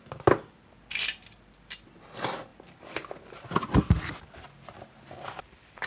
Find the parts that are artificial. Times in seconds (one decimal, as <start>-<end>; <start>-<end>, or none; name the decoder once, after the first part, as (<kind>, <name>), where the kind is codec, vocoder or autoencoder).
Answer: none